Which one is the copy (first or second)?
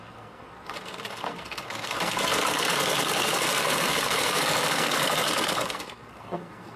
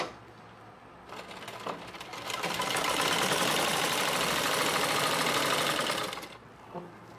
first